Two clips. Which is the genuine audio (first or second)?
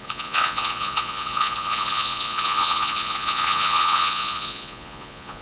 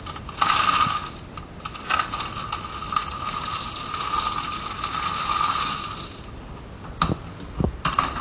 second